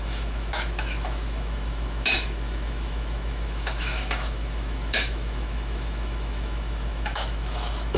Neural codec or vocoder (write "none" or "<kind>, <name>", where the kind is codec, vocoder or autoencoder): autoencoder, DAC-VAE